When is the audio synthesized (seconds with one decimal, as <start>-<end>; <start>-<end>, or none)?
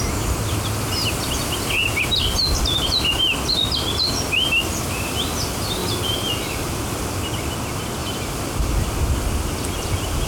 5.8-6.7; 8.0-9.0